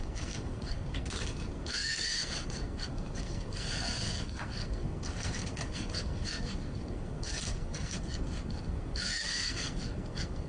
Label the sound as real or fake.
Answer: fake